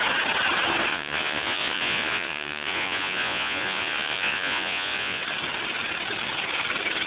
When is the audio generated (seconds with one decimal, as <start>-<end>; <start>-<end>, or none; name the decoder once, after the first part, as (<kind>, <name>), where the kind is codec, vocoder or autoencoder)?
0.9-5.2 (vocoder, Vocos)